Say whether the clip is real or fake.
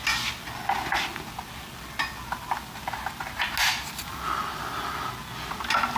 real